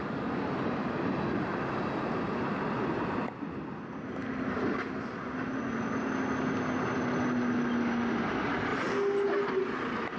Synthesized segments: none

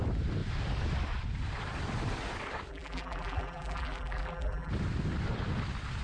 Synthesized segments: 2.7-4.7 (vocoder, BigVGAN v2)

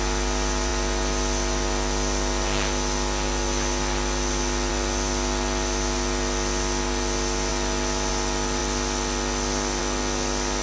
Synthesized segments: none